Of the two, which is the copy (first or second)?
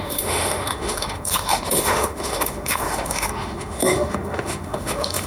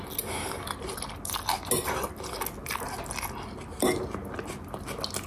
first